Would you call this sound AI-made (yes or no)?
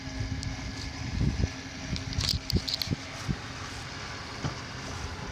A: no